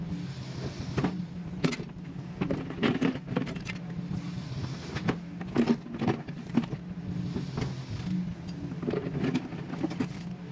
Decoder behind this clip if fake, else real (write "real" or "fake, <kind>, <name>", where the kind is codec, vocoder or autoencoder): real